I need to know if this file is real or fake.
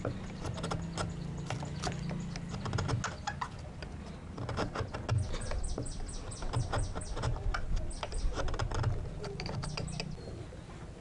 real